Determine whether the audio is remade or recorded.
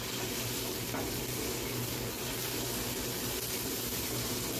recorded